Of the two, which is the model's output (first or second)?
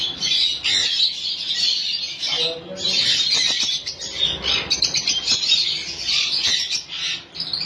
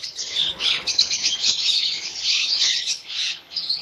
second